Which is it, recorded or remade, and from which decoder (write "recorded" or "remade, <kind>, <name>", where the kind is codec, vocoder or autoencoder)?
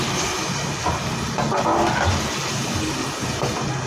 recorded